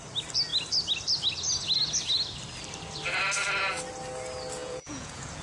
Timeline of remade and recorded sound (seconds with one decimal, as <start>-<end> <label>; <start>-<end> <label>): 0.0-4.6 recorded; 4.6-5.4 remade